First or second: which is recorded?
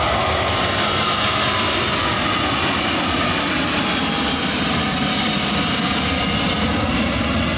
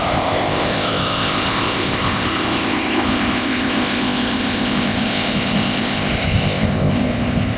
first